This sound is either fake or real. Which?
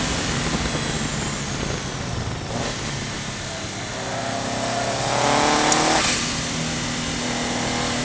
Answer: real